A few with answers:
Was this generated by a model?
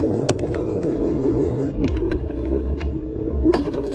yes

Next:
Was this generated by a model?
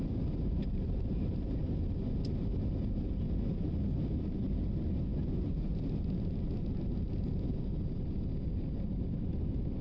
no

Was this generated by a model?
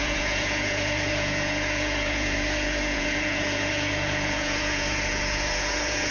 yes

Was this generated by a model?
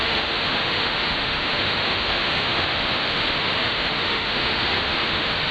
yes